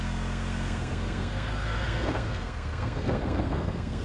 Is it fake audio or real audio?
fake